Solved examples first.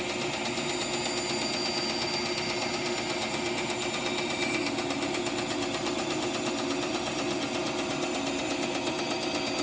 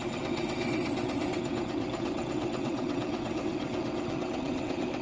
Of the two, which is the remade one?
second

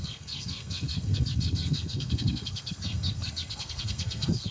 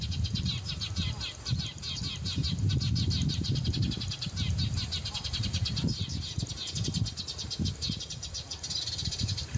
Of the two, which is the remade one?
first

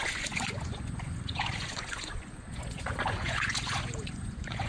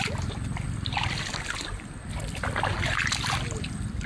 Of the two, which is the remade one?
first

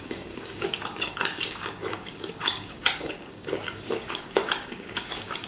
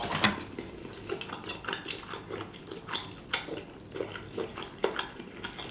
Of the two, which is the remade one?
first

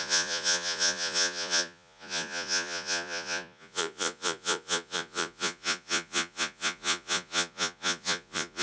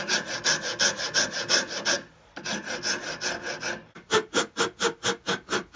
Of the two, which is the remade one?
first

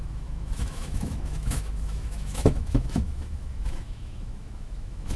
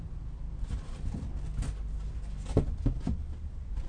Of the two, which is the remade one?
first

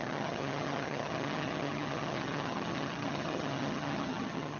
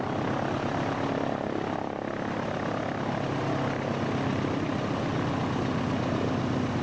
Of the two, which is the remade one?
first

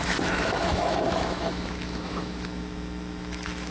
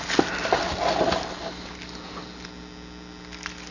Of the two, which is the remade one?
first